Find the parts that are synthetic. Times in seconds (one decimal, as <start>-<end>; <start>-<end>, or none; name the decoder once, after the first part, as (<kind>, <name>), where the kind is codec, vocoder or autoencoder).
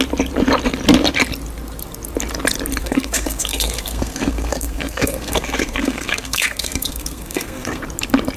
2.8-7.8 (codec, SNAC)